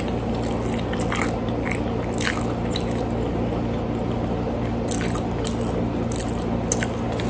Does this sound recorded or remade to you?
recorded